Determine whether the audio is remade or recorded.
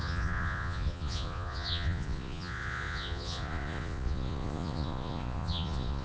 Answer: remade